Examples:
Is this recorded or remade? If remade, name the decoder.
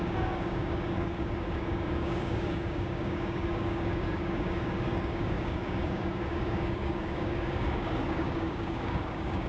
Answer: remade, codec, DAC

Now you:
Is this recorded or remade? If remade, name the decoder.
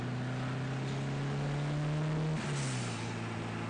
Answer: recorded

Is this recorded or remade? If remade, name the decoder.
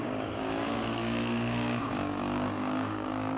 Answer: remade, codec, DAC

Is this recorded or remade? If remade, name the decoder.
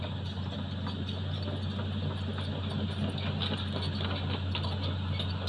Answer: recorded